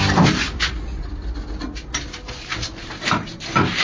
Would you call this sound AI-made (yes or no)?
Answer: no